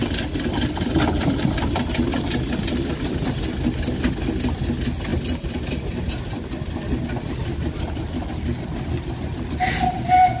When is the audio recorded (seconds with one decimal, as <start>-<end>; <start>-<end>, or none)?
0.0-10.4